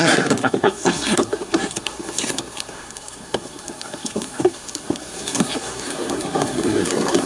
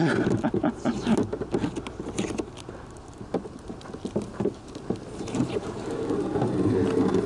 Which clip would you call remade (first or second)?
first